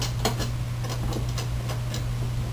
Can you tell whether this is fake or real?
real